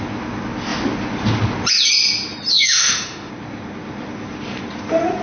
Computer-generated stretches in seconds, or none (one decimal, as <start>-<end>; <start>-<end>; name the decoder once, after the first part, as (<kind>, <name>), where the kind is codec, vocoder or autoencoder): 2.5-3.3 (autoencoder, DAC-VAE)

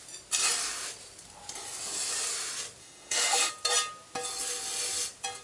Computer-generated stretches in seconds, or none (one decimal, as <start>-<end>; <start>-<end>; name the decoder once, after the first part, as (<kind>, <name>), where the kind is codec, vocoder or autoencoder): 2.8-3.5 (autoencoder, DAC-VAE)

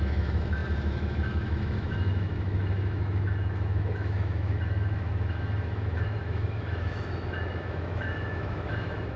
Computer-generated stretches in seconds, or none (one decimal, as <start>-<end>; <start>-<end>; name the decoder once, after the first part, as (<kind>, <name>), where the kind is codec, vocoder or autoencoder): 0.0-9.2 (autoencoder, DAC-VAE)

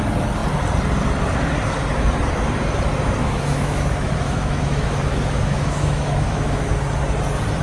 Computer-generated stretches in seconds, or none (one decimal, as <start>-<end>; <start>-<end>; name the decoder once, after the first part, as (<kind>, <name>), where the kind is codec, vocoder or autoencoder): 3.2-6.7 (autoencoder, DAC-VAE)